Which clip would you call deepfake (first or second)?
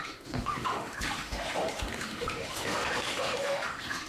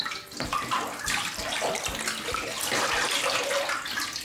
first